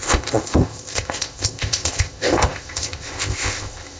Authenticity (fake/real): fake